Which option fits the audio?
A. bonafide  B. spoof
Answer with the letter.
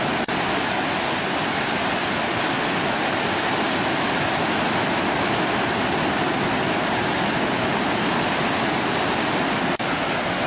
A